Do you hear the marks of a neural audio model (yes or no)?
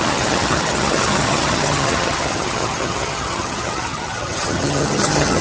yes